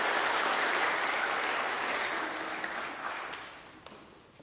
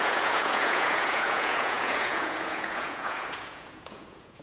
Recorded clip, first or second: first